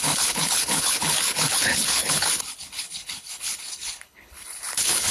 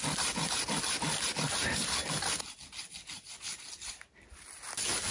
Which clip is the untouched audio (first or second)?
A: second